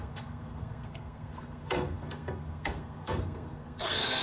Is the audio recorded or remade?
remade